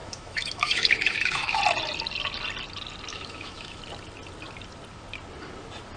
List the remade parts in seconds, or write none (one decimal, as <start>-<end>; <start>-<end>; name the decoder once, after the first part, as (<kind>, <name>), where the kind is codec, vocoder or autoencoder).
0.0-1.6 (autoencoder, DAC-VAE); 3.1-3.8